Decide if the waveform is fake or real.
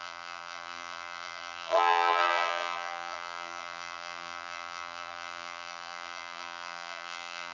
fake